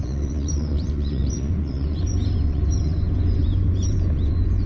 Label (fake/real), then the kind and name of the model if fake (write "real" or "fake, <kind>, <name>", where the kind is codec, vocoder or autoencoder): fake, vocoder, Vocos